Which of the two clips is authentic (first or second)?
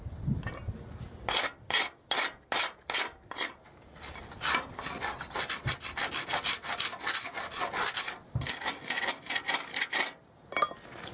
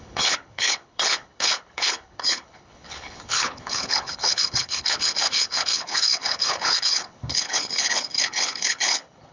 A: first